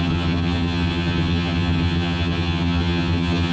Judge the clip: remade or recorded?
remade